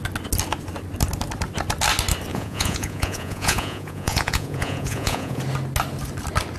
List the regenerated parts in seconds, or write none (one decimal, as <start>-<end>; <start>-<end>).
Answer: 2.3-5.4